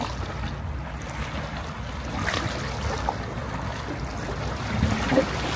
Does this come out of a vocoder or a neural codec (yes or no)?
no